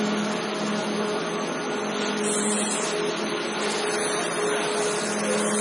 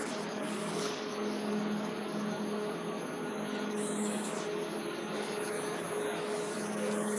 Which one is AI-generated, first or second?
second